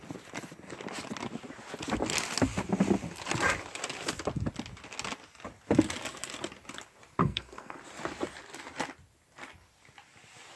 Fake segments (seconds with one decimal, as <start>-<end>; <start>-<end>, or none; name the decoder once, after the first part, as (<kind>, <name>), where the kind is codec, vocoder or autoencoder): 7.2-7.8 (codec, SNAC)